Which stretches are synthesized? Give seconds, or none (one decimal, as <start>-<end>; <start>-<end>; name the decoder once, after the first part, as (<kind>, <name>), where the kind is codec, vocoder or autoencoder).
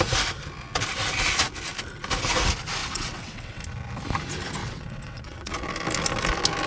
2.8-3.6 (vocoder, WaveNeXt); 4.6-5.7